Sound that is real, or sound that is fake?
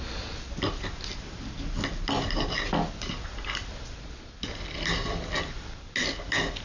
real